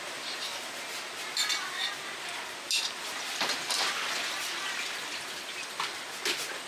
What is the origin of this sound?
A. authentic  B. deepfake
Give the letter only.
A